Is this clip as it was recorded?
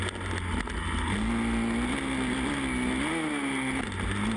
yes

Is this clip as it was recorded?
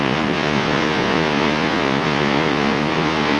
no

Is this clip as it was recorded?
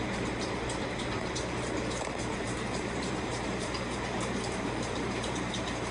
no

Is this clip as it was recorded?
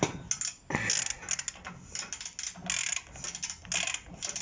yes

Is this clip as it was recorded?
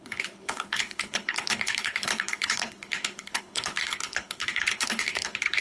no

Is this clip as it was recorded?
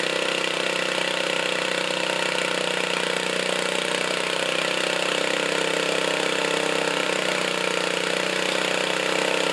yes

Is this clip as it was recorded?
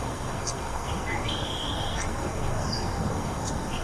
no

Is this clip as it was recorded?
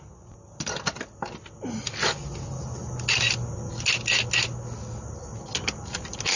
yes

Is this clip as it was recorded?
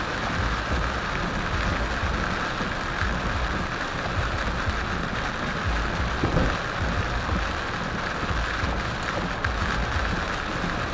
yes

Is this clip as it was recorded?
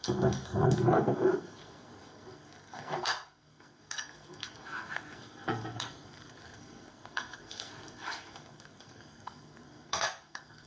no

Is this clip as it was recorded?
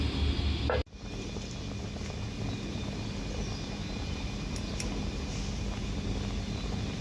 yes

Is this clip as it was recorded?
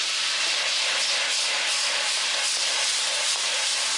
yes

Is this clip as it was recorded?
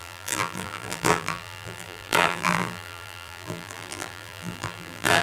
no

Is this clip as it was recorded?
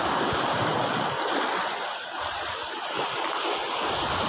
yes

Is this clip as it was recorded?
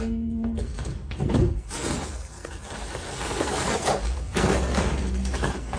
no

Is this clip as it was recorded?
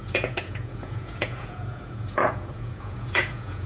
no